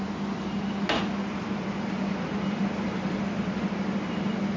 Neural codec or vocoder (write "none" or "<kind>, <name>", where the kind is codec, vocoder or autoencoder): none